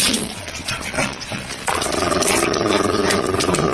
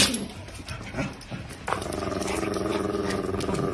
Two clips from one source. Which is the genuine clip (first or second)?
second